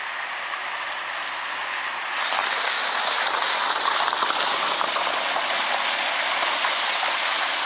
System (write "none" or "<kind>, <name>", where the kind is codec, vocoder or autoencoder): none